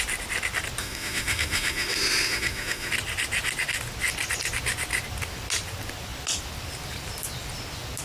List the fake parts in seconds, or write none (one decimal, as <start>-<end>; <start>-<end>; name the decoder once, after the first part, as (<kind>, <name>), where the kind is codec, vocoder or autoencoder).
0.8-2.9 (autoencoder, DAC-VAE)